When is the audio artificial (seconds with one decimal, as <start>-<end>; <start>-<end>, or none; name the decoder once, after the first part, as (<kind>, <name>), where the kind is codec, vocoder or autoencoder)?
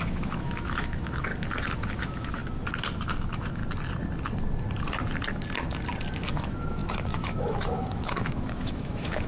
0.0-1.3 (autoencoder, DAC-VAE); 1.8-2.4; 3.0-3.6; 6.3-9.3